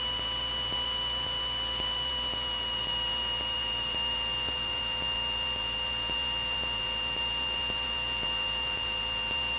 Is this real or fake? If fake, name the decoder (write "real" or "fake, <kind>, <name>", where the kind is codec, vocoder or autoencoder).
fake, vocoder, BigVGAN v2